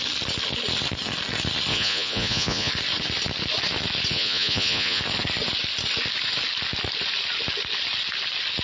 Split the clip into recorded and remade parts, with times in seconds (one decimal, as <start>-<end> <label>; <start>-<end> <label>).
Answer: 0.0-1.7 recorded; 1.7-2.7 remade; 2.7-4.1 recorded; 4.1-5.0 remade; 5.0-8.6 recorded